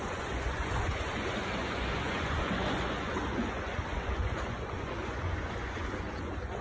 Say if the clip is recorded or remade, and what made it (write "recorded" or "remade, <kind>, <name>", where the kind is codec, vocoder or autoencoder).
remade, vocoder, Vocos